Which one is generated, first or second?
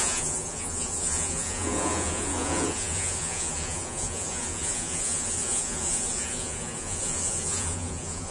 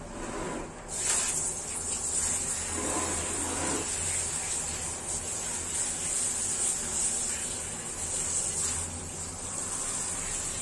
first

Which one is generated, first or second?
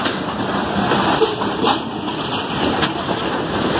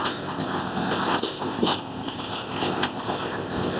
second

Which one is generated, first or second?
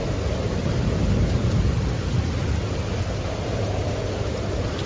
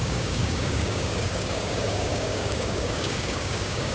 second